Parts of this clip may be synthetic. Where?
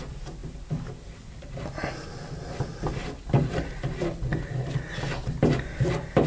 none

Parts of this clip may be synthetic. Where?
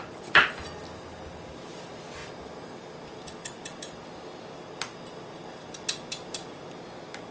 none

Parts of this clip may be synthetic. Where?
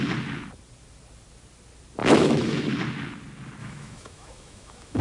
2.0-2.7 (autoencoder, DAC-VAE); 3.6-5.0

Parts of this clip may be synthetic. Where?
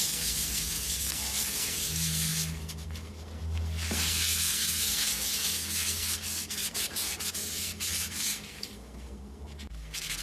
0.0-10.2 (codec, SNAC)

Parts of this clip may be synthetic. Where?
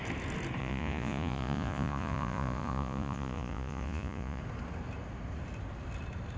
0.6-4.4 (vocoder, Vocos)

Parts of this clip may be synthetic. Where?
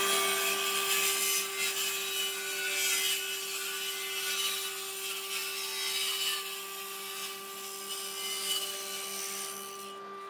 none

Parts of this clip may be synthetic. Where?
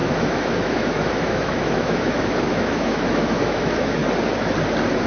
0.0-4.0 (autoencoder, DAC-VAE)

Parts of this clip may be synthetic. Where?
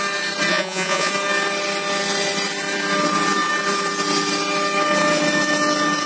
0.5-1.1 (vocoder, Vocos)